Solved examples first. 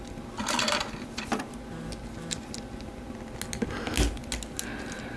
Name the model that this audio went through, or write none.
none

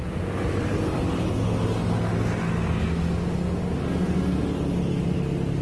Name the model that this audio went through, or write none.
none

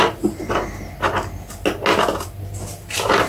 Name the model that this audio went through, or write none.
none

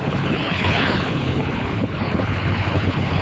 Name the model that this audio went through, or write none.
codec, HILCodec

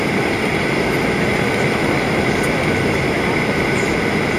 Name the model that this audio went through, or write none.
none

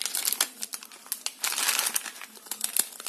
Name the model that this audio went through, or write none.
none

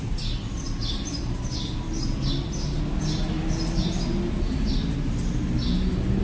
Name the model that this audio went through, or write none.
none